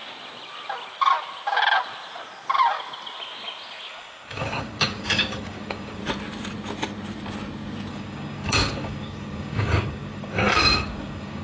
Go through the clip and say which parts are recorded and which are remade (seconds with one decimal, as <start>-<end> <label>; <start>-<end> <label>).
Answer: 0.0-3.9 recorded; 3.9-6.0 remade; 6.0-7.9 recorded; 7.9-11.4 remade